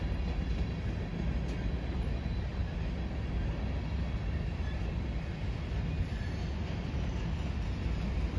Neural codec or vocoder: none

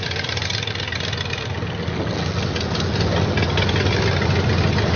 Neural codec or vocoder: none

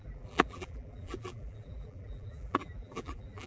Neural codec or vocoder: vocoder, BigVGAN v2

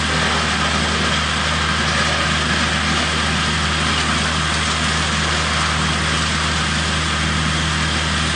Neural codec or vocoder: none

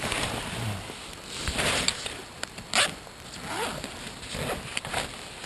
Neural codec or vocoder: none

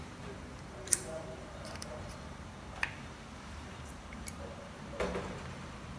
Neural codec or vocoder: vocoder, BigVGAN v2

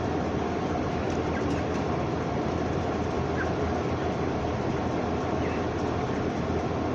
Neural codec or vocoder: none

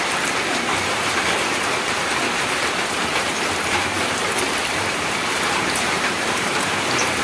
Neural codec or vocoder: vocoder, BigVGAN v2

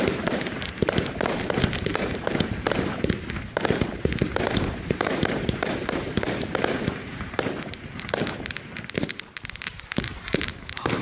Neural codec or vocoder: vocoder, BigVGAN v2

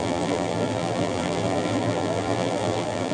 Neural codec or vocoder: vocoder, BigVGAN v2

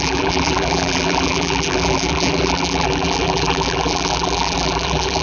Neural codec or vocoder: vocoder, BigVGAN v2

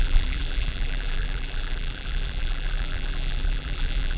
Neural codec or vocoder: vocoder, BigVGAN v2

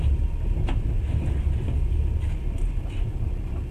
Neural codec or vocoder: none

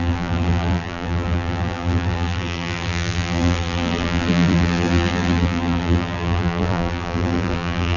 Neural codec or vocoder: vocoder, BigVGAN v2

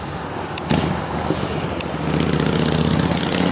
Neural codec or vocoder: none